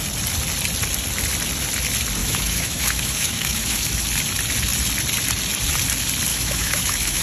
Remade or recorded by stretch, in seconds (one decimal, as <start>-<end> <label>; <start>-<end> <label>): 0.0-2.2 recorded; 2.2-3.9 remade; 3.9-6.3 recorded; 6.3-7.2 remade